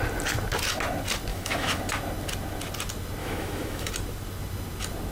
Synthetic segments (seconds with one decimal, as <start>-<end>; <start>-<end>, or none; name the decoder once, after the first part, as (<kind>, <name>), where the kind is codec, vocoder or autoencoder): 1.3-1.8 (autoencoder, DAC-VAE); 3.2-3.9